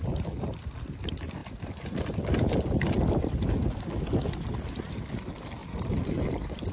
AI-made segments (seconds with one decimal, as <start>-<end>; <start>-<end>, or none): 5.6-6.7